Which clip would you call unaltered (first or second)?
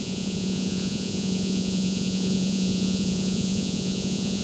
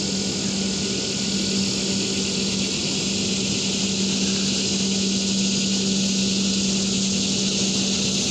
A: second